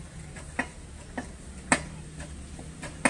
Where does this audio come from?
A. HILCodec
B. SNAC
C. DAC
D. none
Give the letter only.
D